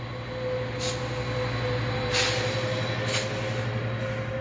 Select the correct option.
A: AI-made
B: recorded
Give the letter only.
B